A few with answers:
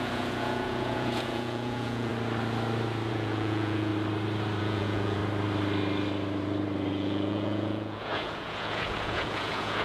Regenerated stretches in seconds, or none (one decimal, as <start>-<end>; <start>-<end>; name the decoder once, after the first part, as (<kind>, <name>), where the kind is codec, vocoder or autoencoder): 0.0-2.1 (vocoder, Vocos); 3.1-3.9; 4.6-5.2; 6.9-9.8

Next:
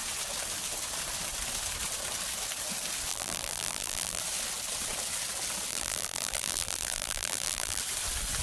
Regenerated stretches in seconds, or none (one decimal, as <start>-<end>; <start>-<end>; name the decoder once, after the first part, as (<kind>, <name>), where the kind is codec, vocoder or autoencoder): 3.1-4.2 (vocoder, BigVGAN v2); 5.7-7.8

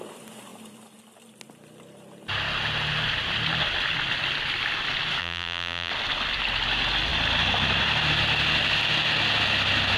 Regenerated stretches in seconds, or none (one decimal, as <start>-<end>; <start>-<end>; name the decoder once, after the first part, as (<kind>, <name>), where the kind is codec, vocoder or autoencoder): 5.2-5.9 (vocoder, BigVGAN v2)

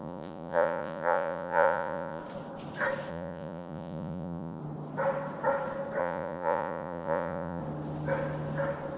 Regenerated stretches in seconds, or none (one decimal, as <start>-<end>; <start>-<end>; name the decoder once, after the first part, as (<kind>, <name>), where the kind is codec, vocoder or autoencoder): 0.0-2.2 (vocoder, Vocos); 3.1-4.6; 6.0-7.6